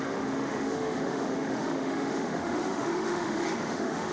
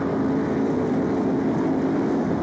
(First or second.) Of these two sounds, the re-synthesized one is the first